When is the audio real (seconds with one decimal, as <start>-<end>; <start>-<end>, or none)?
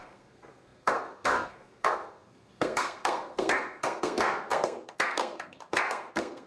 none